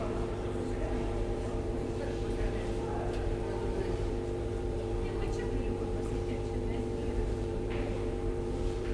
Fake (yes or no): yes